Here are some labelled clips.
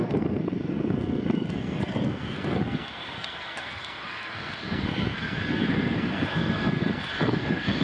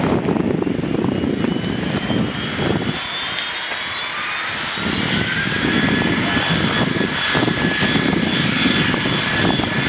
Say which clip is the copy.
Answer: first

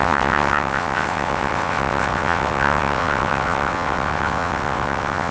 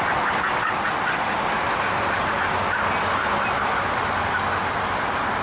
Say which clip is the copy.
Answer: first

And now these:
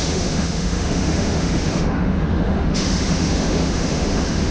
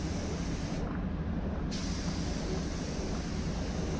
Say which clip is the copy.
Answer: first